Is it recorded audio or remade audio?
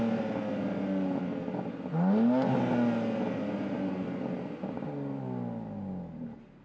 recorded